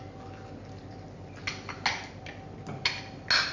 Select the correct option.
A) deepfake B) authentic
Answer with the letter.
B